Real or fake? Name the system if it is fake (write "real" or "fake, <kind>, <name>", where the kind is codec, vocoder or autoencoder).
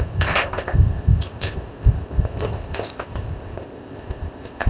fake, codec, ZipCodec